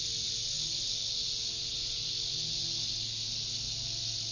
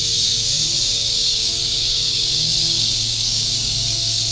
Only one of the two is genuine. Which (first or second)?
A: first